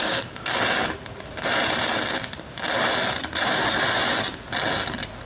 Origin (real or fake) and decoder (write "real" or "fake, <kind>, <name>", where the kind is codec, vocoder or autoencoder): real